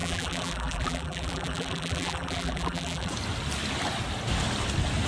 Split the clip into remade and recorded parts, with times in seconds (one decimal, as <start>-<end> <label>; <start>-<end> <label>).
0.0-3.1 remade; 3.1-5.1 recorded